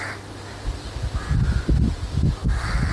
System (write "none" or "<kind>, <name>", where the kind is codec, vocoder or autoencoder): none